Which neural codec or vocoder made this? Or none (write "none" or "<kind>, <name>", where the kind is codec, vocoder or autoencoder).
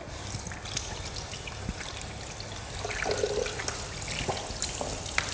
none